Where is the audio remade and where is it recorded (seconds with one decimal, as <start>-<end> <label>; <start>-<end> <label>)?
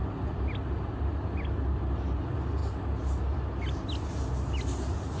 0.0-1.1 remade; 1.1-5.2 recorded